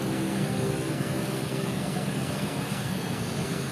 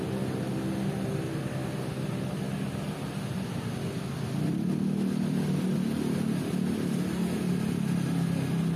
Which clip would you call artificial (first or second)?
first